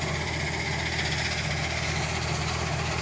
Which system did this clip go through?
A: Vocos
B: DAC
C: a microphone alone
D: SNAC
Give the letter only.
C